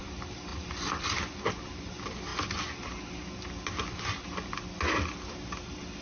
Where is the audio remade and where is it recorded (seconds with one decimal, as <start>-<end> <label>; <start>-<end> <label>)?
0.0-0.5 recorded; 0.5-1.3 remade; 1.3-6.0 recorded